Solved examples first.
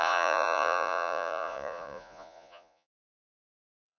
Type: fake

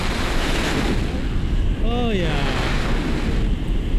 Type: real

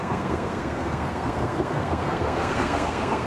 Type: fake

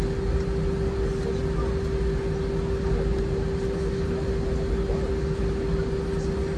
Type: real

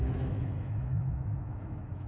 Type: fake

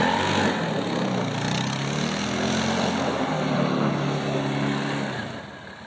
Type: real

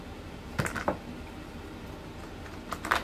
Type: real